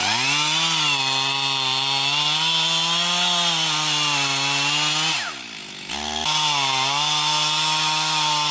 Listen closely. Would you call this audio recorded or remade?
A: recorded